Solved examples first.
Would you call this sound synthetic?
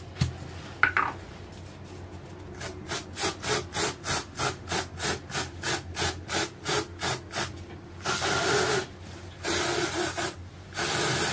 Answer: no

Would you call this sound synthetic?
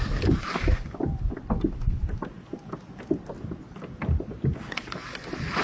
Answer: no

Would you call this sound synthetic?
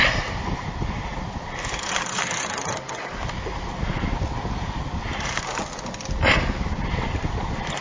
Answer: no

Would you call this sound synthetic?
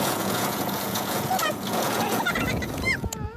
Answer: yes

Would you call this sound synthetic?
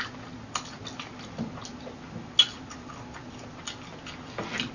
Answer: no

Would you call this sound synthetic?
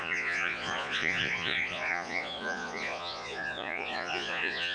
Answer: yes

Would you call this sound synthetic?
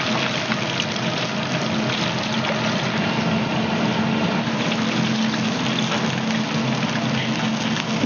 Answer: no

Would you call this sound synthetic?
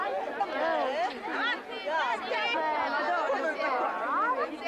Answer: no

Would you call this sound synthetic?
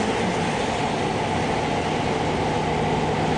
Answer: no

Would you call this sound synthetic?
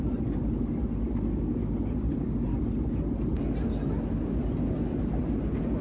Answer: no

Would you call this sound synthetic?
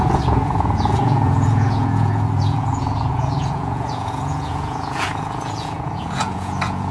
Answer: yes